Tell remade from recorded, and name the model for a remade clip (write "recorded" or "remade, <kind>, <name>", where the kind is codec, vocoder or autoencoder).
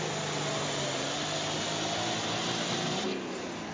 recorded